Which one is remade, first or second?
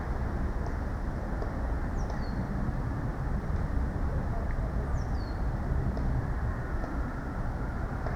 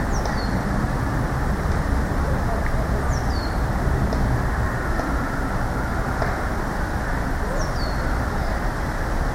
first